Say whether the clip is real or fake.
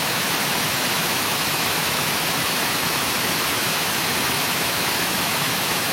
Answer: fake